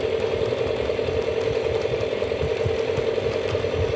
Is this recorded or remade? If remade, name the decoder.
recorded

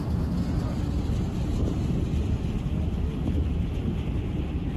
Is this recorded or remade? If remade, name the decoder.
recorded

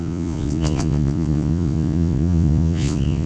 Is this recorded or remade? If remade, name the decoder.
remade, vocoder, Vocos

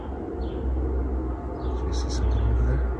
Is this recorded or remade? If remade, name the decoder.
recorded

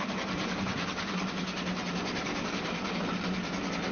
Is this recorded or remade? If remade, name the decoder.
recorded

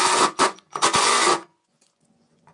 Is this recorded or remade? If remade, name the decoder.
remade, vocoder, Vocos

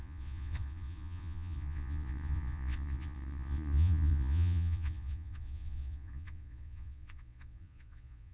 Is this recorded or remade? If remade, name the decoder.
remade, vocoder, Vocos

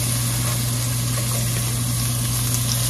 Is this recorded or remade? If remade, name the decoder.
recorded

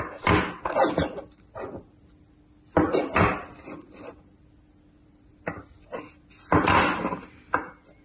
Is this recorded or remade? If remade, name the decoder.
recorded